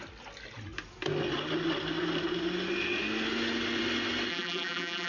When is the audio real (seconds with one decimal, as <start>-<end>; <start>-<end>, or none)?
0.0-4.3